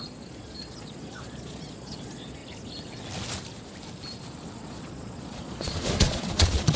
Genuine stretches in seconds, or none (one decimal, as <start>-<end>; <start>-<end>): 2.4-4.7

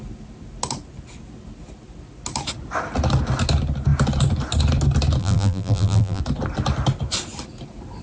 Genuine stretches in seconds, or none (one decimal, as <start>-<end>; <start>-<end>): 0.0-5.2; 6.2-8.0

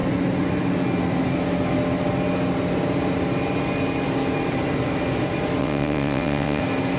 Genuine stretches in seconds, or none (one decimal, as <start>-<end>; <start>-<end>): 0.0-5.6; 6.6-7.0

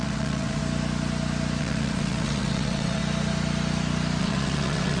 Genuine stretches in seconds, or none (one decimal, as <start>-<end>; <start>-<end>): 0.6-1.6; 3.0-4.2

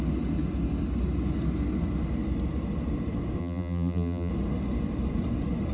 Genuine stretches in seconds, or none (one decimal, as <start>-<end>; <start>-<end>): 0.0-3.4; 4.3-5.7